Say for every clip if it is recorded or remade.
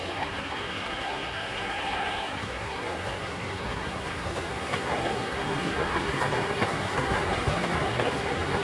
remade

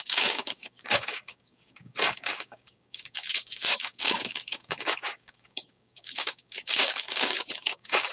remade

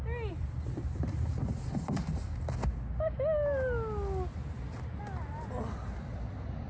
recorded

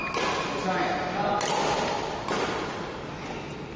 recorded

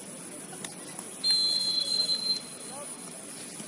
recorded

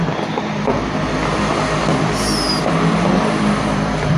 remade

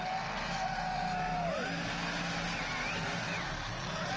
recorded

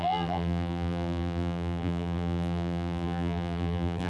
remade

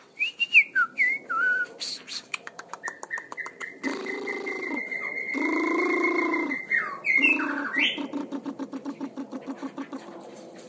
remade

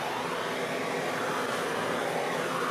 recorded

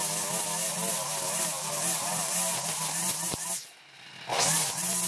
recorded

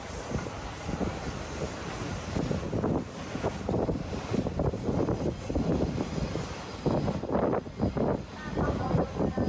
recorded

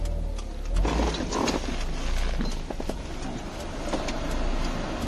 recorded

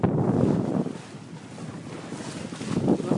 recorded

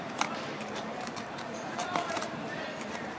remade